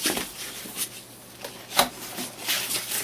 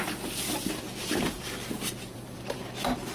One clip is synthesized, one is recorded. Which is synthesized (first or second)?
second